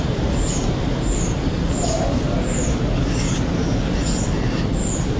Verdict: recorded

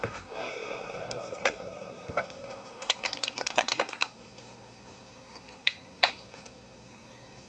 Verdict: remade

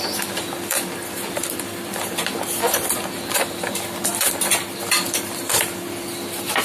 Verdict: remade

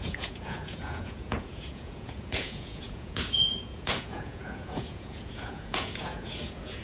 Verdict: remade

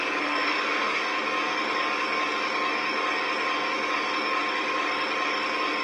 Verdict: remade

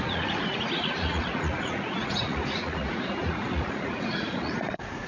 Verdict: remade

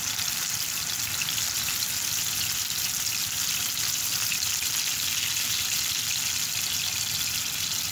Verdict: recorded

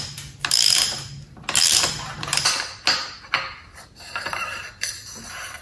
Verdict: recorded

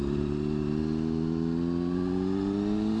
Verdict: recorded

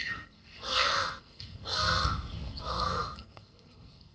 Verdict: remade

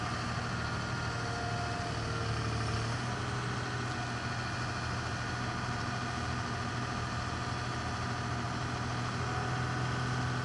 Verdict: recorded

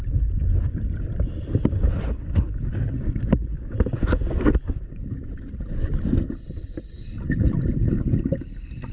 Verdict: remade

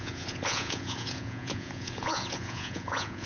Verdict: remade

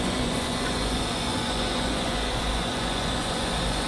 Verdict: remade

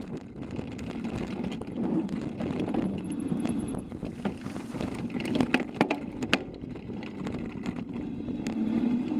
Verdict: recorded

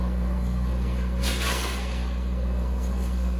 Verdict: remade